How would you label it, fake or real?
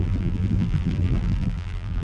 fake